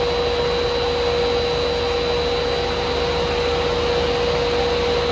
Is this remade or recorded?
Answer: recorded